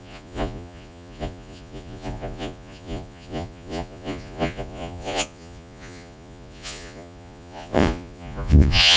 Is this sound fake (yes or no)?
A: yes